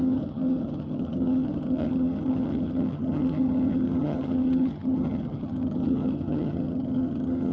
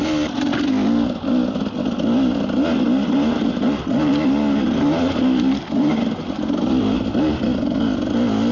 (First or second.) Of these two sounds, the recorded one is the second